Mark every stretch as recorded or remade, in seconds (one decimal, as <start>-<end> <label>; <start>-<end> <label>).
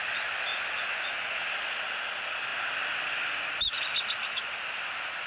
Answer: 0.0-0.5 recorded; 0.5-1.4 remade; 1.4-5.3 recorded